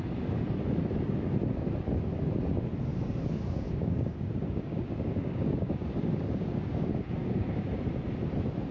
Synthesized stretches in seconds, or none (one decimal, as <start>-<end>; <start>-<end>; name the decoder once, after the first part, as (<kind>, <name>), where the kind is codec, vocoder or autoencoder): 2.9-7.8 (codec, DAC)